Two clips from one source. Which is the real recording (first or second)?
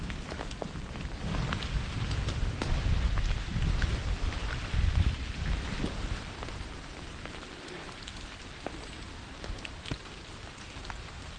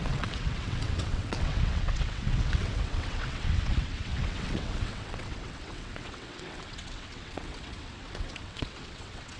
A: first